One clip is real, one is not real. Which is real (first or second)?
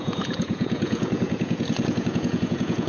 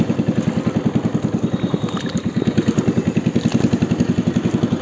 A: second